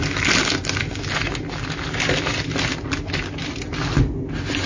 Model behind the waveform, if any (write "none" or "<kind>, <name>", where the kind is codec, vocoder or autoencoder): none